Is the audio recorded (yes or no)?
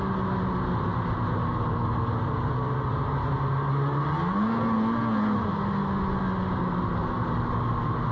yes